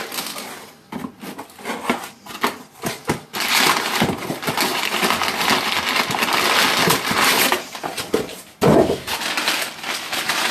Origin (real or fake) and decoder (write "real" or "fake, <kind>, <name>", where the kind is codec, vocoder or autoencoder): real